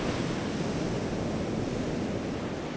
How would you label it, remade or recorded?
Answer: recorded